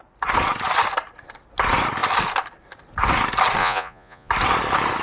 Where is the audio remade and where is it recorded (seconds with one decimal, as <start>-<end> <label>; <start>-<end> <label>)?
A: 0.0-3.6 recorded; 3.6-4.3 remade; 4.3-5.0 recorded